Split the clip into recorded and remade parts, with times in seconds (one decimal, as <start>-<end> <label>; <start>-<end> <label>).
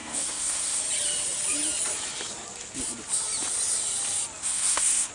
0.0-0.8 remade; 0.8-4.4 recorded; 4.4-5.1 remade